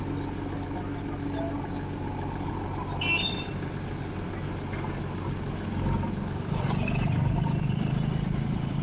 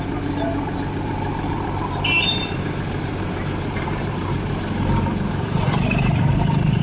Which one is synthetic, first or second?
second